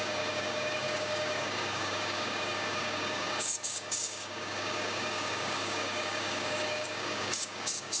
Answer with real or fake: fake